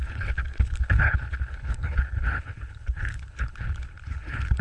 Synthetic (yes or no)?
yes